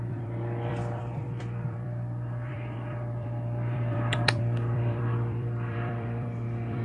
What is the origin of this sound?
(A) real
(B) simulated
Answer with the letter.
B